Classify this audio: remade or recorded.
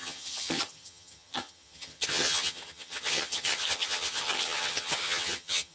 remade